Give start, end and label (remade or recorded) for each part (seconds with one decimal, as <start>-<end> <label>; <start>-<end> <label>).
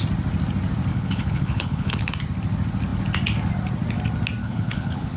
0.0-0.9 recorded; 0.9-2.1 remade; 2.1-4.4 recorded; 4.4-5.2 remade